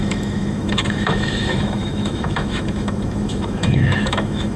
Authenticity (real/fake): fake